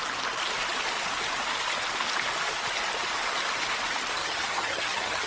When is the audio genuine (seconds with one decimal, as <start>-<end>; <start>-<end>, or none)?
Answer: 0.0-4.2